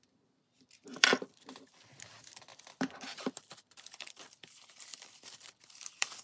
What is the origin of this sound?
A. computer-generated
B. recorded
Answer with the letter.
A